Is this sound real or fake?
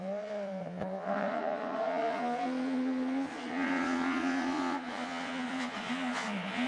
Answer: fake